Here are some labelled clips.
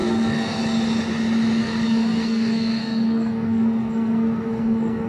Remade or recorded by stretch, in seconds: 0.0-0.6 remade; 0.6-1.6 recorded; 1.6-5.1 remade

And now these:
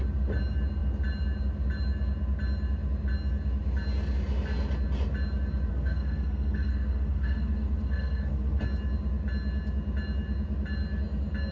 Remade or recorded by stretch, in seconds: 0.0-5.7 recorded; 5.7-8.6 remade; 8.6-11.5 recorded